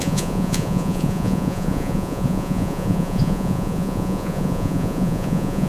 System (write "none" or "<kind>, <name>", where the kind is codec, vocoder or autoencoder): vocoder, Vocos